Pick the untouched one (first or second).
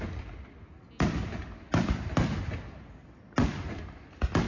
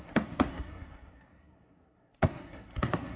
first